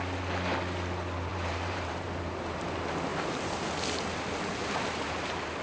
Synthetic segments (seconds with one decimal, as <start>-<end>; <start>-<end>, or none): 1.3-2.2; 3.1-3.6; 4.6-5.6